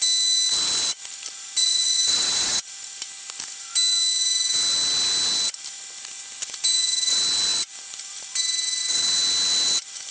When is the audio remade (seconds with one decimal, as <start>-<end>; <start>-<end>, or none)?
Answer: 1.6-2.7